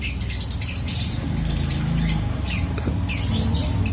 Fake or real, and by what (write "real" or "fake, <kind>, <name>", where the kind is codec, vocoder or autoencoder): real